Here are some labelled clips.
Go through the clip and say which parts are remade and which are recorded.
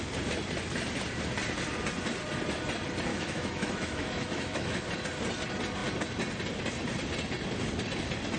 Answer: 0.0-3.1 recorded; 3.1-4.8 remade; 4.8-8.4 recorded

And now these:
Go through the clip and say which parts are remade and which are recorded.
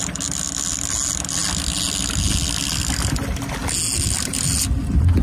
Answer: 0.0-5.2 recorded